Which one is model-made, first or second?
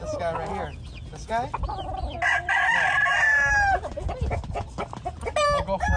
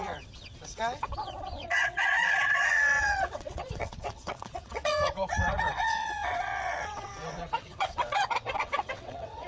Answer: second